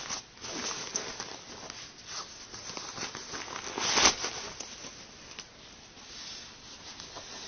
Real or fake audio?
real